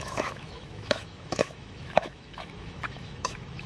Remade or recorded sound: remade